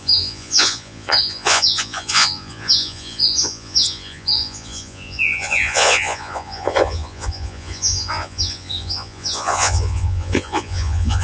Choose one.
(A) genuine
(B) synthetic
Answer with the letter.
B